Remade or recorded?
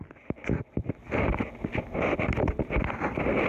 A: recorded